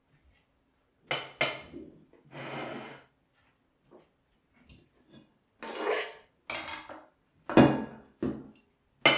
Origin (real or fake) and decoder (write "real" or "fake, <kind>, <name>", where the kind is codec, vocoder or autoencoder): real